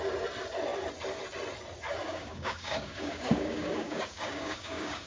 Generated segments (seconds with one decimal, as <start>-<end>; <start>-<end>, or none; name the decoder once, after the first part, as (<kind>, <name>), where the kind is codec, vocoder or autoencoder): 2.0-5.1 (codec, DAC)